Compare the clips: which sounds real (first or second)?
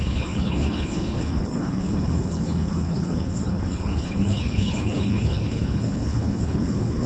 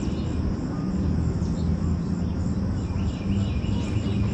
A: second